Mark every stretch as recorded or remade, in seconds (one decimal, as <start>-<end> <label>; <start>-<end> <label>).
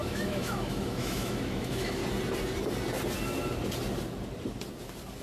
0.0-2.0 remade; 2.0-5.2 recorded